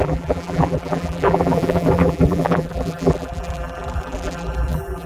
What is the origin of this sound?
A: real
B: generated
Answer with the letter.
B